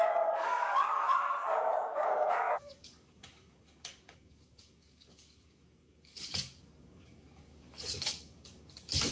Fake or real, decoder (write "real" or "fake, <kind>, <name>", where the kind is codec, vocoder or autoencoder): fake, codec, DAC